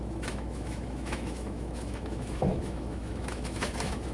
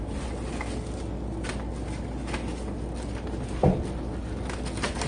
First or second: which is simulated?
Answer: first